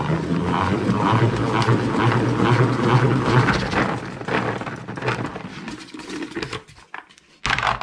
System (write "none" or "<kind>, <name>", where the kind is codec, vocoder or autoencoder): none